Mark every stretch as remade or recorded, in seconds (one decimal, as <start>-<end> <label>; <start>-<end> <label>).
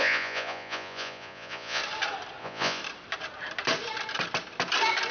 0.0-1.8 remade; 1.8-2.4 recorded; 2.4-2.8 remade; 2.8-5.1 recorded